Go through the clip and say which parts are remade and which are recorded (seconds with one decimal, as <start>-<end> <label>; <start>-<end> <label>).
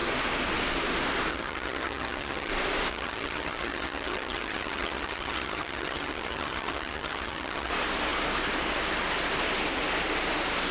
0.0-1.3 recorded; 1.3-2.5 remade; 2.5-2.9 recorded; 2.9-7.7 remade; 7.7-10.7 recorded